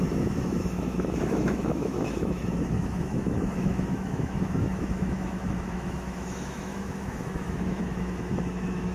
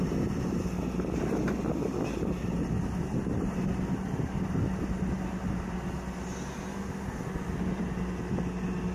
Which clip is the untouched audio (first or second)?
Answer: second